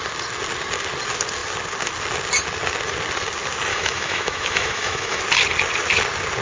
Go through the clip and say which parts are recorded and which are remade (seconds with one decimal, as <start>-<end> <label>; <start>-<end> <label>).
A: 0.0-3.7 recorded; 3.7-5.2 remade; 5.2-6.4 recorded